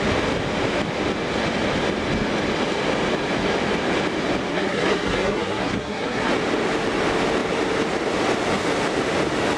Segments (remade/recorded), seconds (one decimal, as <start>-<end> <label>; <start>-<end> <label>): 0.0-4.5 recorded; 4.5-6.3 remade; 6.3-9.6 recorded

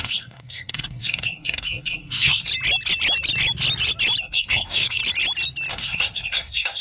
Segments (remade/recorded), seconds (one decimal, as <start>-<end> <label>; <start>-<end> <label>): 0.0-2.5 remade; 2.5-4.2 recorded; 4.2-5.0 remade; 5.0-5.7 recorded; 5.7-6.8 remade